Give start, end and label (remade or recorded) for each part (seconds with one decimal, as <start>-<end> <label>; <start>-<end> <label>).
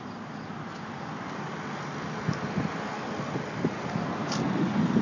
0.0-5.0 recorded